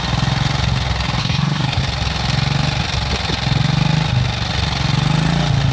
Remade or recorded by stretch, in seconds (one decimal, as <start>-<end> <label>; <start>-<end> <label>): 0.0-1.2 recorded; 1.2-1.8 remade; 1.8-5.7 recorded

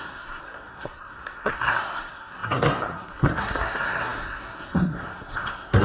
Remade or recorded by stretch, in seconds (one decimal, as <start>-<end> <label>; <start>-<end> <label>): 0.0-5.8 remade

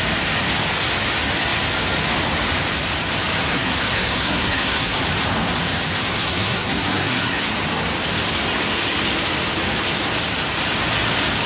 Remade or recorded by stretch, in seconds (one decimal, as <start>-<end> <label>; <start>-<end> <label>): 0.0-3.4 recorded; 3.4-5.0 remade; 5.0-6.1 recorded; 6.1-7.4 remade; 7.4-11.5 recorded

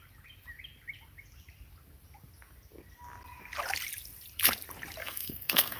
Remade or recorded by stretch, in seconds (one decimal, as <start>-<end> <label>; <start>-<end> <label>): 0.0-5.0 recorded; 5.0-5.8 remade

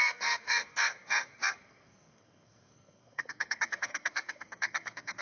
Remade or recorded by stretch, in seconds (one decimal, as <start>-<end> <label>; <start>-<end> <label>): 0.0-5.2 remade

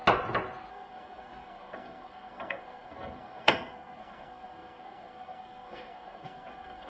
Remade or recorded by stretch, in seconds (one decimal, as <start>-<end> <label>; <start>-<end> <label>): 0.0-0.7 recorded; 0.7-6.9 remade

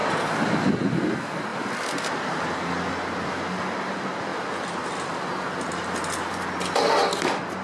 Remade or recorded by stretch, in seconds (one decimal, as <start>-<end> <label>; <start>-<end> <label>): 0.0-7.6 recorded

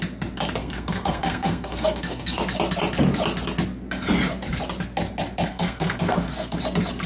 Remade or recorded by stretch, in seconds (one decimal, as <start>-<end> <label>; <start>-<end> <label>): 0.0-0.6 recorded; 0.6-2.4 remade; 2.4-5.5 recorded; 5.5-6.6 remade; 6.6-7.1 recorded